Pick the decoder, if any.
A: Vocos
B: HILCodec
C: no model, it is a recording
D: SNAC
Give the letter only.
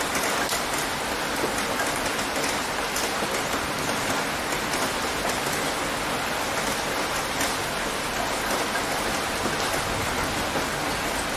C